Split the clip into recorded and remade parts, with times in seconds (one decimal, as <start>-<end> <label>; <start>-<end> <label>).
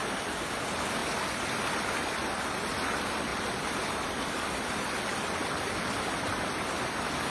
0.0-1.0 remade; 1.0-1.6 recorded; 1.6-7.3 remade